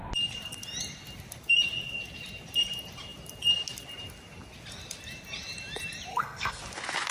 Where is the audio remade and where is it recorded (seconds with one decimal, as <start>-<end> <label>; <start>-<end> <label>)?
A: 0.0-6.1 recorded; 6.1-6.6 remade; 6.6-7.1 recorded